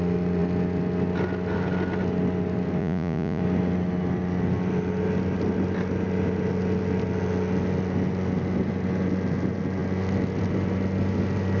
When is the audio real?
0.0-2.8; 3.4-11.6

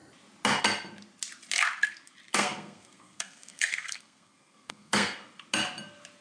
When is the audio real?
0.0-2.3; 5.2-6.2

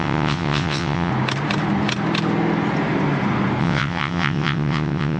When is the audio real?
1.1-3.6

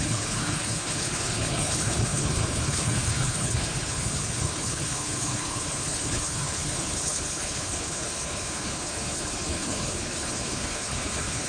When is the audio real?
none

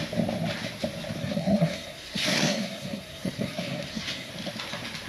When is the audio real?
0.0-1.2; 4.3-5.1

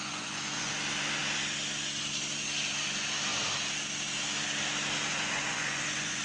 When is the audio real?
0.7-5.1